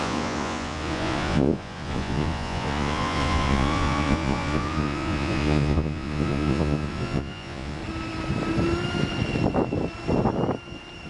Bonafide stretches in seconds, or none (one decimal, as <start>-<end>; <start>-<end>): 7.8-11.1